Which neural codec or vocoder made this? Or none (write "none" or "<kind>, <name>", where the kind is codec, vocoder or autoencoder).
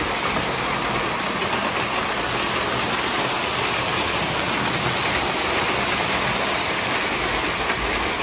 none